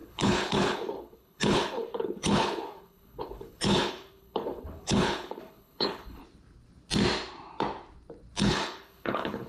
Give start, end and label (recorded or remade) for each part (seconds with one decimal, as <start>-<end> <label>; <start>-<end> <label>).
0.0-6.2 remade; 6.2-8.4 recorded; 8.4-9.5 remade